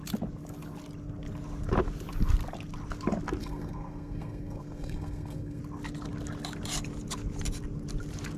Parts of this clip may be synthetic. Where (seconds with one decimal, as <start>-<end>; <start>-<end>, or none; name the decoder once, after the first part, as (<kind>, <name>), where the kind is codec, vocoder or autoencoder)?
3.4-5.6 (codec, SNAC)